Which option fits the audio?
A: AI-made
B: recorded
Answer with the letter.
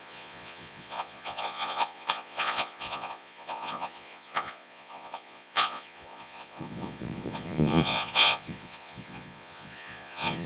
A